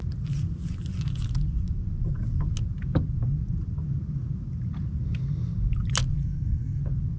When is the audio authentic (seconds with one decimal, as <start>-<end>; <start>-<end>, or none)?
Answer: 0.0-6.2; 6.8-7.2